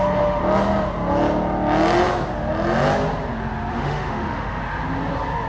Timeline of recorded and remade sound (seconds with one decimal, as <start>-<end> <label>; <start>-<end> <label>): 0.0-0.4 remade; 0.4-3.7 recorded; 3.7-4.6 remade; 4.6-5.5 recorded